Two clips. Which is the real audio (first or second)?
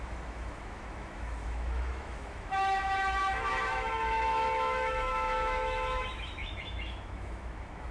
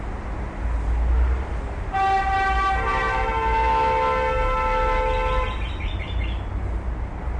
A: second